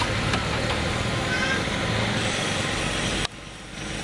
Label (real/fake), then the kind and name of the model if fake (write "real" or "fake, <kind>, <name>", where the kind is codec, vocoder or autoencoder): real